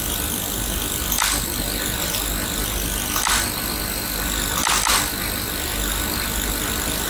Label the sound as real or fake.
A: real